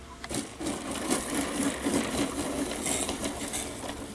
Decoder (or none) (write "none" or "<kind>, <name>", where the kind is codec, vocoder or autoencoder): none